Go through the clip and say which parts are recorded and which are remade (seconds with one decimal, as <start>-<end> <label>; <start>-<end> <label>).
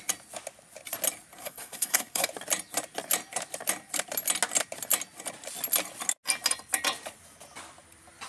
0.0-1.4 recorded; 1.4-2.3 remade; 2.3-8.3 recorded